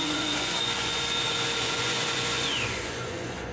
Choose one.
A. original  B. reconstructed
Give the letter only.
B